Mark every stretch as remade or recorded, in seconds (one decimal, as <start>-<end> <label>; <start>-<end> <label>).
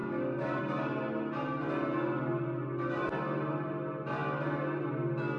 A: 0.0-0.6 remade; 0.6-5.4 recorded